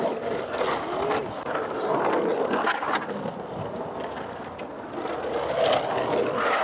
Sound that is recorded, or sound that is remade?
recorded